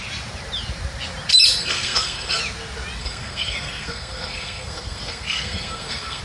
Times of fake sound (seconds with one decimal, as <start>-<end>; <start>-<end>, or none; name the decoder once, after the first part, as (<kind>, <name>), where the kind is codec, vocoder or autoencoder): 1.6-2.4 (codec, SNAC); 3.0-6.2